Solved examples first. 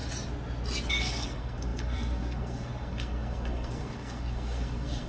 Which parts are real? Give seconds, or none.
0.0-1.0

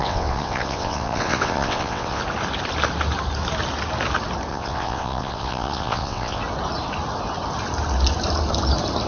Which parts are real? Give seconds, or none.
2.2-4.5; 6.4-9.1

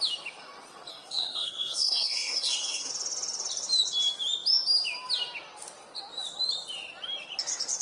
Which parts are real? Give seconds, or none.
0.0-0.9; 2.9-7.8